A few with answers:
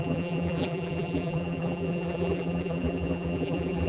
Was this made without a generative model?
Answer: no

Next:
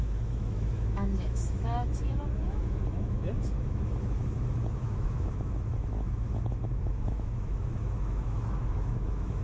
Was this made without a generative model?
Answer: no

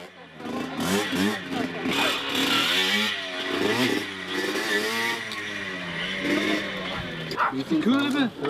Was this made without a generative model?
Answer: yes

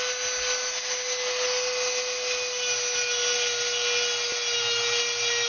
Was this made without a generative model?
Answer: yes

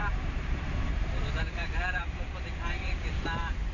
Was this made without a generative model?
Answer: no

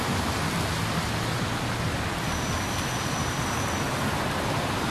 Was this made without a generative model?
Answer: yes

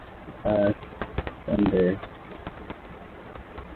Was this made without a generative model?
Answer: yes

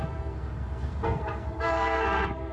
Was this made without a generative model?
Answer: no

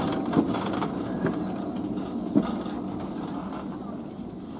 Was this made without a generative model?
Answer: yes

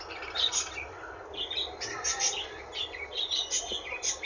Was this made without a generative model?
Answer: yes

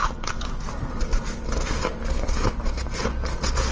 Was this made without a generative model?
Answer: yes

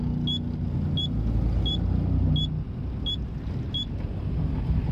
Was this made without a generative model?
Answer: yes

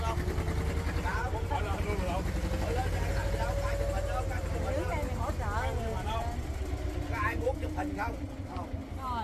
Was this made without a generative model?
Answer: yes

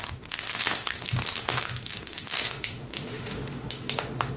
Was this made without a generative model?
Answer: no